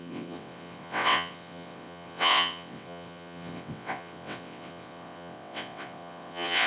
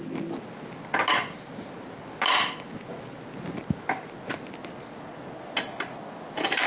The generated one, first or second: first